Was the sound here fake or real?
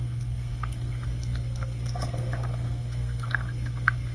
fake